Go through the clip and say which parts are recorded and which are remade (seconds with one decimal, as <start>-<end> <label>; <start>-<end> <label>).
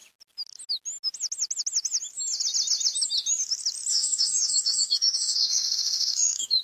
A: 0.0-3.9 recorded; 3.9-6.6 remade